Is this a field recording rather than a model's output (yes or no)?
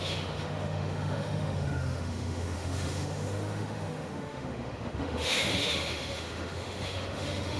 no